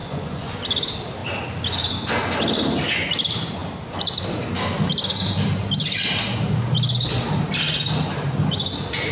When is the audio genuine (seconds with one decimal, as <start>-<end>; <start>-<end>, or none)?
0.6-9.1